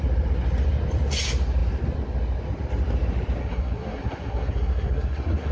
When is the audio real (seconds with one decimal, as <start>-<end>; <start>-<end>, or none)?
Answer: 0.0-3.4